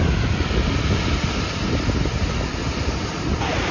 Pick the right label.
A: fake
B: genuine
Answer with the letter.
B